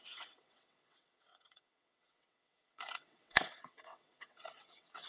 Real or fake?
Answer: fake